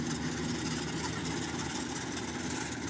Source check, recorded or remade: recorded